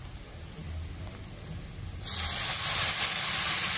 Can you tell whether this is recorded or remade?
recorded